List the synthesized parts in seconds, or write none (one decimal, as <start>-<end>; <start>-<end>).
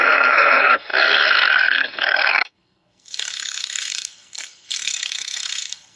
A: 0.0-6.0